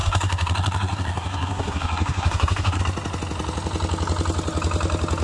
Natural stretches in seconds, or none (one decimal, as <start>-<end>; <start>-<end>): 2.8-5.2